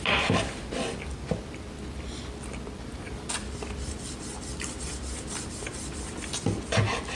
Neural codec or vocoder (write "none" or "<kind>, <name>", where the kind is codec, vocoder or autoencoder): none